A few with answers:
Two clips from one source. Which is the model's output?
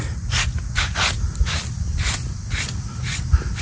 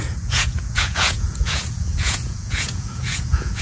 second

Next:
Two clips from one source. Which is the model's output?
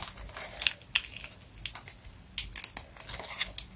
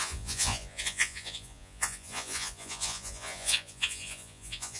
second